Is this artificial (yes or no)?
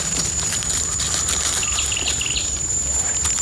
no